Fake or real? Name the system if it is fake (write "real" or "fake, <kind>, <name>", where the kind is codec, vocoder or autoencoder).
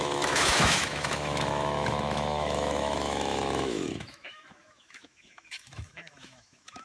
fake, autoencoder, DAC-VAE